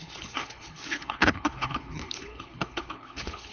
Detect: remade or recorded remade